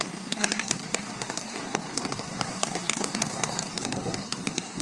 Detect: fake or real fake